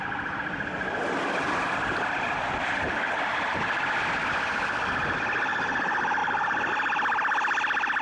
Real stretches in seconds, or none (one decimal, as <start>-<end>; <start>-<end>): 0.0-8.0